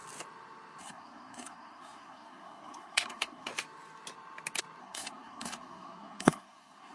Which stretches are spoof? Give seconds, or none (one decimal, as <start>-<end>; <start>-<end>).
0.8-3.5; 4.8-6.9